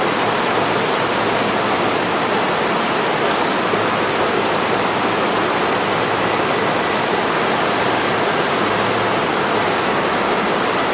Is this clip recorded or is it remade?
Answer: recorded